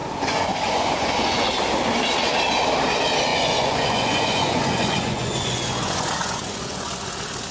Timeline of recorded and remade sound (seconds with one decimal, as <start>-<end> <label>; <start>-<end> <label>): 0.0-1.5 remade; 1.5-3.3 recorded; 3.3-7.1 remade; 7.1-7.5 recorded